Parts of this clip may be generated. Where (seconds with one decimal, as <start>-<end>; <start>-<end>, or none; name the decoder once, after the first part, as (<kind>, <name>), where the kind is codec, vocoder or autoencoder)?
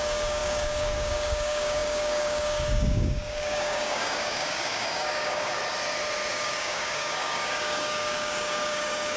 0.0-5.6 (codec, DAC); 6.3-9.2